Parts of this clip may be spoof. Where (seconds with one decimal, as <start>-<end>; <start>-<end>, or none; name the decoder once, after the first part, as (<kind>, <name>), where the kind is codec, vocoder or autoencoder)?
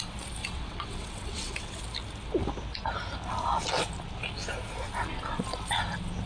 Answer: 0.4-1.8 (vocoder, WaveNeXt)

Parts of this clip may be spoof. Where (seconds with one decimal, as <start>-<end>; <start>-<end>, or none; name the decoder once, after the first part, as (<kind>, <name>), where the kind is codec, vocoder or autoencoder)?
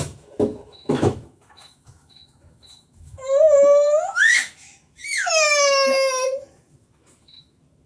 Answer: 0.0-7.9 (autoencoder, DAC-VAE)